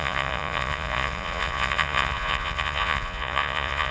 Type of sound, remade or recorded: remade